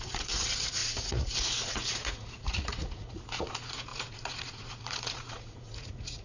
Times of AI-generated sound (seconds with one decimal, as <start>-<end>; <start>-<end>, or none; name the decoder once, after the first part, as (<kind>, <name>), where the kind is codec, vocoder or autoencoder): 0.0-6.2 (vocoder, Vocos)